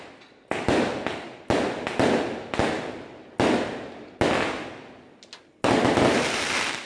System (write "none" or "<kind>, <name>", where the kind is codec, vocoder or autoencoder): none